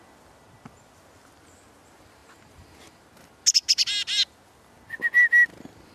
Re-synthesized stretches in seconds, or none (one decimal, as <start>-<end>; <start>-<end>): none